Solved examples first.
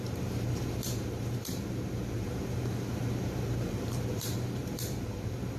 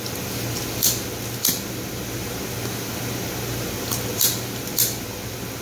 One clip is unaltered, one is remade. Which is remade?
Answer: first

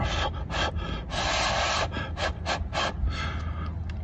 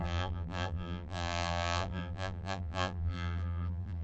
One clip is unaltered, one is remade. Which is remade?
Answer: second